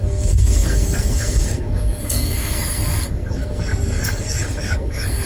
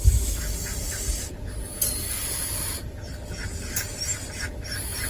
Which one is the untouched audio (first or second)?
second